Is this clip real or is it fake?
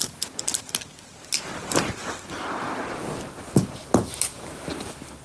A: real